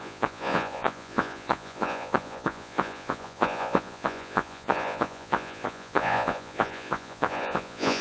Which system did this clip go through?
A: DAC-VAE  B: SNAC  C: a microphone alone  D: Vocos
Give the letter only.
D